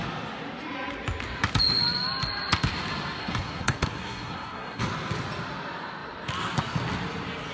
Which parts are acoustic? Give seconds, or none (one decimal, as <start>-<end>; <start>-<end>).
0.0-3.2; 4.8-7.5